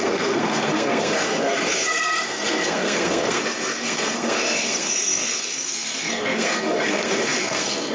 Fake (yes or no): yes